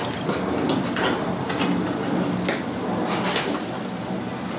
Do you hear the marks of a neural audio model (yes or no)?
no